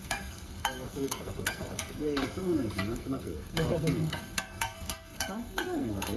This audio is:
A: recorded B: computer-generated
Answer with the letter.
B